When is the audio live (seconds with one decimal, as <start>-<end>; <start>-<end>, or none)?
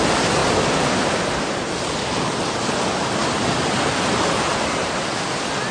0.0-5.7